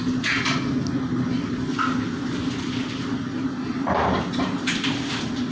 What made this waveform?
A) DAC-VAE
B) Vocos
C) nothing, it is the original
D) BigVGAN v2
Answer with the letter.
C